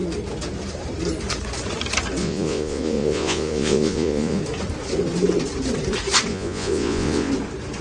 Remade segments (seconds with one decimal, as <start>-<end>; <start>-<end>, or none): 2.2-4.4; 6.3-7.3